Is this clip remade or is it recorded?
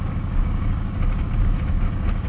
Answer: remade